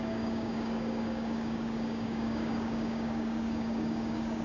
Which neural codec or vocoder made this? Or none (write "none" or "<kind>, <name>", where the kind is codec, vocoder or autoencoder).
codec, DAC